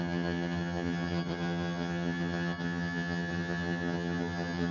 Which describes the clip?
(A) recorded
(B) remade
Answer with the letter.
B